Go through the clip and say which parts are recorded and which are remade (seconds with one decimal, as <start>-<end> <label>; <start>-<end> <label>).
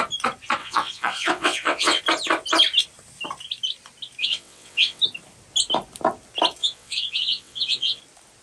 0.0-0.6 recorded; 0.6-2.0 remade; 2.0-4.2 recorded; 4.2-5.0 remade; 5.0-6.6 recorded; 6.6-8.0 remade; 8.0-8.4 recorded